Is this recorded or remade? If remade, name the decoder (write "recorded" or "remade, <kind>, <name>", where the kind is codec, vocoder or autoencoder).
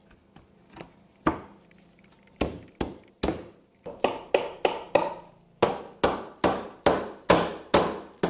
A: recorded